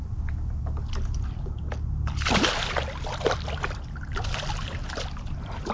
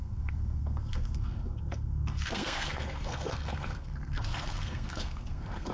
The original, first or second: first